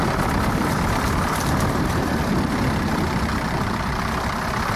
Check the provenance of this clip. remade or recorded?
recorded